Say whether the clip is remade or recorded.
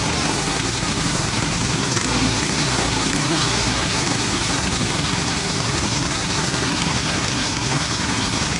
remade